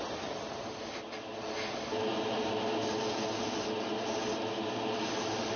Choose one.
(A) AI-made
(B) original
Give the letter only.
B